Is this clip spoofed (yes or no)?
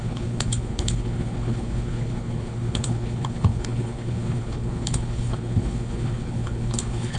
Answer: yes